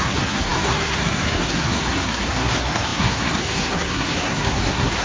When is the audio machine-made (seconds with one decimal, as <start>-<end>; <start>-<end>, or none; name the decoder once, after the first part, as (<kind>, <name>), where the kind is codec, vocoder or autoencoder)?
0.0-5.0 (codec, SNAC)